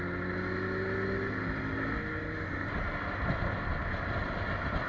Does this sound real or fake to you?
real